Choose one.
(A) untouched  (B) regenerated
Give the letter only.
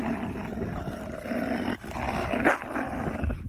A